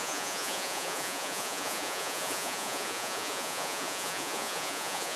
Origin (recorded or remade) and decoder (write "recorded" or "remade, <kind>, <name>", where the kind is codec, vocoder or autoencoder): remade, vocoder, Vocos